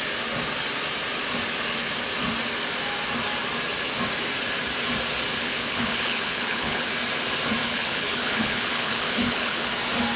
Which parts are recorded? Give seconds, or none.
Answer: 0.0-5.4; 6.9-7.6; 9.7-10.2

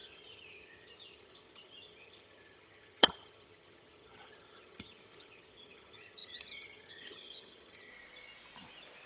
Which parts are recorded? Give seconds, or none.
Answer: 7.9-9.1

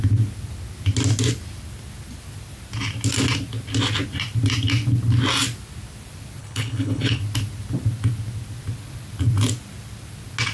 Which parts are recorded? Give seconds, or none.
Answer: 0.0-6.4; 7.2-10.5

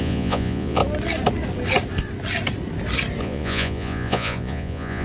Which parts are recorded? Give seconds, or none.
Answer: 0.8-3.2

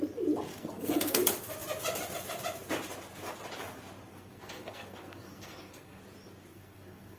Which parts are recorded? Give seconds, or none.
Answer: 0.0-0.5; 1.2-4.1; 6.0-6.5

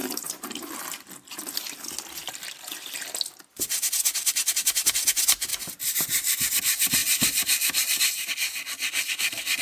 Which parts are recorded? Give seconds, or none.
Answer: 0.7-5.5; 6.5-7.0; 8.3-9.6